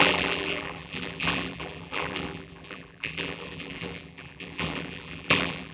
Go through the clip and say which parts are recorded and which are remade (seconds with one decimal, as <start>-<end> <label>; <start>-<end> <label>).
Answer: 0.0-5.7 remade